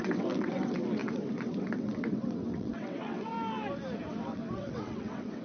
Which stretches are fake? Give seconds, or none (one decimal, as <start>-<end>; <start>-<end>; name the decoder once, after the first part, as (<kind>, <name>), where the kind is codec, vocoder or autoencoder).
0.0-3.3 (vocoder, WaveNeXt); 4.1-5.4